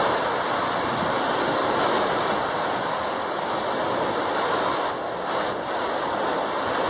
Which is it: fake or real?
real